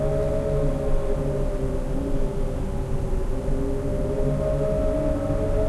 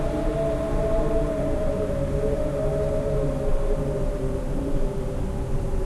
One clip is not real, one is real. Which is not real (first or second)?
second